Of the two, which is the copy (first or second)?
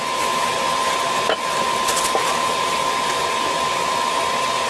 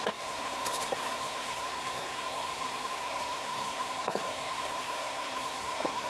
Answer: second